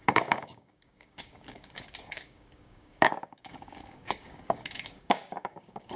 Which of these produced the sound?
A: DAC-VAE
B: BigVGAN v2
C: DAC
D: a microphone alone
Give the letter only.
C